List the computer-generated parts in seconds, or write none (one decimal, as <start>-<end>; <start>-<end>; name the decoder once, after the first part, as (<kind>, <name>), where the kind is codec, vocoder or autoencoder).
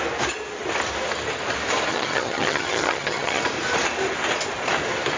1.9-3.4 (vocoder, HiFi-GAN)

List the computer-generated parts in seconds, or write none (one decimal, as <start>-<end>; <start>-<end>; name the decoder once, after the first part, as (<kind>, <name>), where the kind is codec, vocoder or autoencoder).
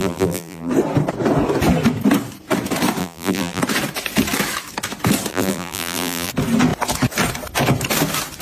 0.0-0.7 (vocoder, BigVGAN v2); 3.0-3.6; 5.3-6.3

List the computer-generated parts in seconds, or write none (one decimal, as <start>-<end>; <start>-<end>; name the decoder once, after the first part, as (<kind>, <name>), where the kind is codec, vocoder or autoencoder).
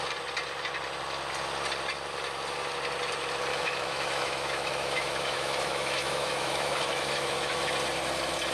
3.5-7.7 (autoencoder, DAC-VAE)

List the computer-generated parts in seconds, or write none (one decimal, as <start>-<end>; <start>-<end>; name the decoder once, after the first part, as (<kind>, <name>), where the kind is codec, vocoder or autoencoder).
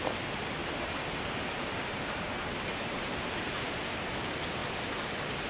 0.6-3.8 (vocoder, BigVGAN v2)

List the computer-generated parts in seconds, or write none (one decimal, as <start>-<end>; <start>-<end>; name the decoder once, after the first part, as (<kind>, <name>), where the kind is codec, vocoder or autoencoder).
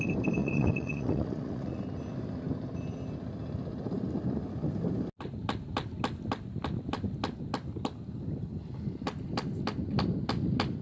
0.4-1.8 (vocoder, Vocos)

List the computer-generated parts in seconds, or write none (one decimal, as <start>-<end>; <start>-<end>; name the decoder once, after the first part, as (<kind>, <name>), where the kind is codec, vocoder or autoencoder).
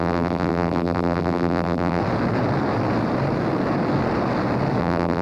0.0-2.0 (vocoder, BigVGAN v2); 4.8-5.2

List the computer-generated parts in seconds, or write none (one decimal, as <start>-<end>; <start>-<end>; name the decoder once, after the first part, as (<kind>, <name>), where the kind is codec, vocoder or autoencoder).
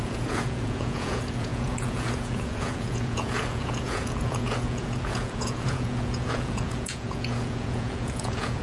0.0-8.6 (vocoder, Vocos)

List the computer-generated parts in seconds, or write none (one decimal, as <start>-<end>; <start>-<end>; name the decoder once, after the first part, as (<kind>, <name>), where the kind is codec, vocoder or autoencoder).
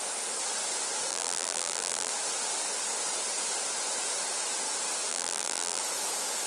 1.1-2.1 (vocoder, BigVGAN v2); 5.1-5.8